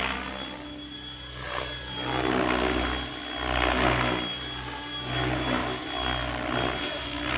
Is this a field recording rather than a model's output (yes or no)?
yes